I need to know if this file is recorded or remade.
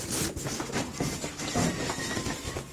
recorded